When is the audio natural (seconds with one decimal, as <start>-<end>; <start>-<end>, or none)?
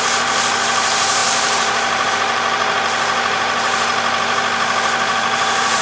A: 3.9-4.8